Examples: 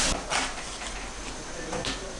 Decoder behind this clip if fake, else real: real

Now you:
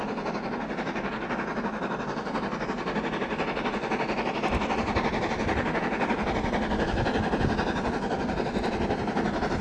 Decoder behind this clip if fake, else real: real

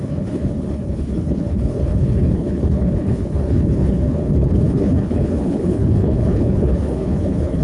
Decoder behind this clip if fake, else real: fake, codec, HILCodec